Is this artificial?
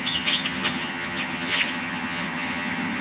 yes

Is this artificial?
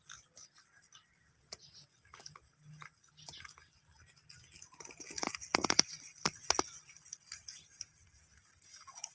no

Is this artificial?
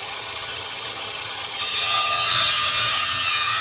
yes